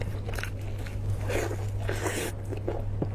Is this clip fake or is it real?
real